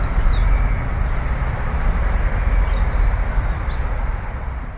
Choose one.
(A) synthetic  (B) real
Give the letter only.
B